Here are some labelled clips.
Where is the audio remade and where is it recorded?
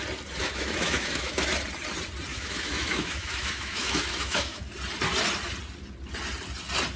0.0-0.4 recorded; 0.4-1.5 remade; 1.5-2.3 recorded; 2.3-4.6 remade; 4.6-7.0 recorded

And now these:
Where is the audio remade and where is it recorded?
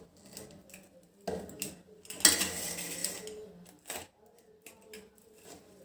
0.0-5.8 recorded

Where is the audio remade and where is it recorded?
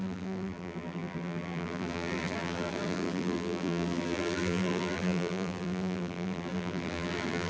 0.0-7.5 remade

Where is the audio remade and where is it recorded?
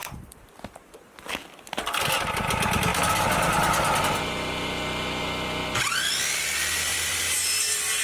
0.0-1.3 remade; 1.3-2.9 recorded; 2.9-4.0 remade; 4.0-6.9 recorded; 6.9-8.0 remade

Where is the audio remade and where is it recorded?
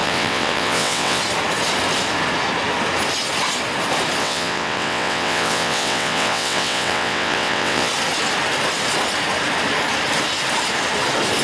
0.0-1.2 remade; 1.2-4.2 recorded; 4.2-7.9 remade; 7.9-11.4 recorded